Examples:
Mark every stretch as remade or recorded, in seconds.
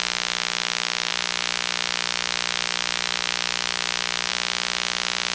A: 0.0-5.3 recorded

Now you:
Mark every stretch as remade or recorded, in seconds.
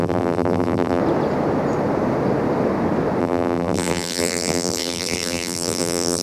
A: 0.0-1.0 remade; 1.0-3.2 recorded; 3.2-6.2 remade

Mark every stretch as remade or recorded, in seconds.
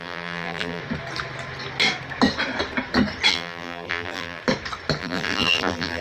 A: 0.0-0.8 remade; 0.8-3.3 recorded; 3.3-4.4 remade; 4.4-5.0 recorded; 5.0-6.0 remade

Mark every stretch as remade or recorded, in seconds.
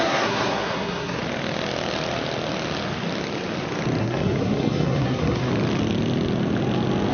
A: 0.0-1.2 remade; 1.2-4.0 recorded; 4.0-5.5 remade; 5.5-7.1 recorded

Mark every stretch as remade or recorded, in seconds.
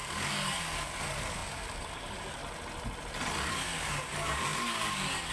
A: 0.0-2.4 remade; 2.4-3.5 recorded; 3.5-5.3 remade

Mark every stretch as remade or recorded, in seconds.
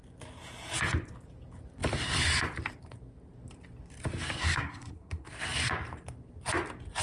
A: 0.0-4.4 recorded; 4.4-5.3 remade; 5.3-7.0 recorded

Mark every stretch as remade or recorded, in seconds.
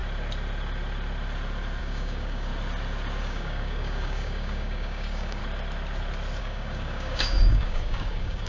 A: 0.0-1.8 recorded; 1.8-2.5 remade; 2.5-3.2 recorded; 3.2-5.4 remade; 5.4-6.4 recorded; 6.4-8.5 remade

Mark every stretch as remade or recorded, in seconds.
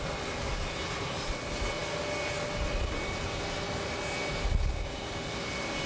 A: 0.0-5.9 recorded